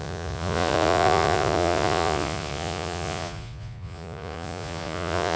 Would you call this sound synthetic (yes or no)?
yes